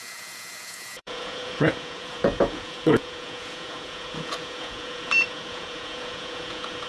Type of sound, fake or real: fake